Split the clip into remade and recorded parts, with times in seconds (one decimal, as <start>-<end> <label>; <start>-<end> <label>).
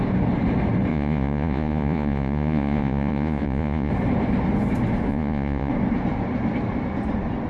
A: 0.0-0.9 recorded; 0.9-3.9 remade; 3.9-5.1 recorded; 5.1-5.7 remade; 5.7-7.5 recorded